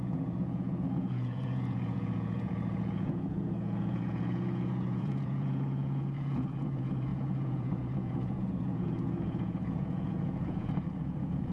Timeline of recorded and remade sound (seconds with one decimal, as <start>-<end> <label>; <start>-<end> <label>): 0.0-11.5 remade